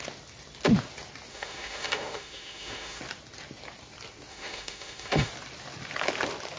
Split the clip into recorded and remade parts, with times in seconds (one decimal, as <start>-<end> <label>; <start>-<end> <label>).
0.0-1.3 recorded; 1.3-3.0 remade; 3.0-4.3 recorded; 4.3-5.3 remade; 5.3-6.6 recorded